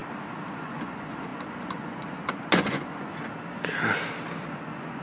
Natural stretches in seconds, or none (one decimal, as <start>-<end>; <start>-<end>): 0.0-0.5; 3.1-4.5